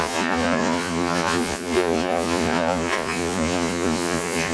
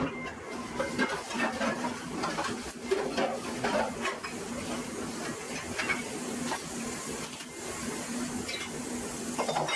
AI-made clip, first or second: first